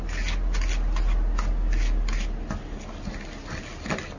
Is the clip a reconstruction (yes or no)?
no